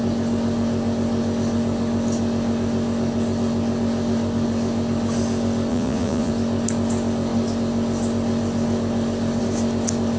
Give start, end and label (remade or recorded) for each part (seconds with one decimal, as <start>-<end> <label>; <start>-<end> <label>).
0.0-5.7 recorded; 5.7-6.3 remade; 6.3-10.2 recorded